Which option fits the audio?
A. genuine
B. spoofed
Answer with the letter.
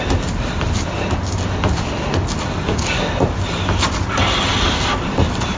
A